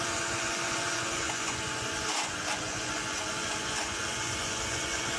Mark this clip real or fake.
fake